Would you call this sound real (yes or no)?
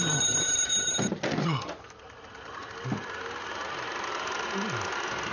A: yes